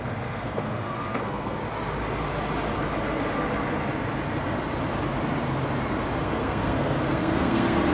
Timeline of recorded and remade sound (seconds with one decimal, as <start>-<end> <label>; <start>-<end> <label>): 0.0-1.6 remade; 1.6-6.2 recorded; 6.2-7.9 remade